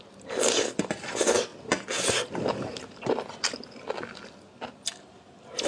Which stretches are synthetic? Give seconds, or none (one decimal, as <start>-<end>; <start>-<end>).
none